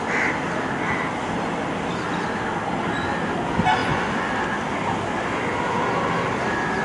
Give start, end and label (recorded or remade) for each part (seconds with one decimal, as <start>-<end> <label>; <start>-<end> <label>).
0.0-3.8 recorded; 3.8-4.3 remade; 4.3-6.8 recorded